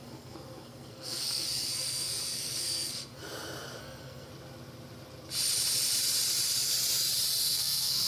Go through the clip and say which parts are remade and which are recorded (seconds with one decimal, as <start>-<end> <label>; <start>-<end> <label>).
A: 0.0-3.2 remade; 3.2-3.8 recorded; 3.8-4.3 remade; 4.3-7.4 recorded; 7.4-8.1 remade